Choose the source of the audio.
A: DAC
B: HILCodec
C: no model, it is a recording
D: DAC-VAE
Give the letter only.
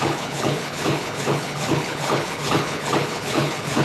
B